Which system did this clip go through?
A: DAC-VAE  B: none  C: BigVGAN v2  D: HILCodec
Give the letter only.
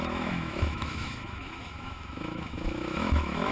A